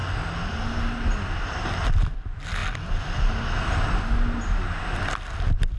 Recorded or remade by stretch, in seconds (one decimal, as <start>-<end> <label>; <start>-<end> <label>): 0.0-5.8 recorded